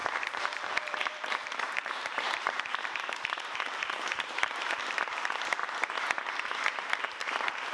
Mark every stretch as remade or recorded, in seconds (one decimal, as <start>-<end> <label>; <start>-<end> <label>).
0.0-5.6 remade; 5.6-6.8 recorded; 6.8-7.7 remade